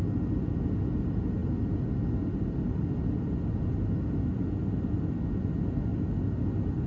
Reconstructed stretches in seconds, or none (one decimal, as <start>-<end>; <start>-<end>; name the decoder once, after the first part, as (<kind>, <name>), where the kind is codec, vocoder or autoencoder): none